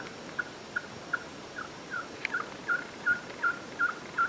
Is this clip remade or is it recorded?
recorded